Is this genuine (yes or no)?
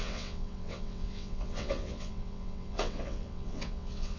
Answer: no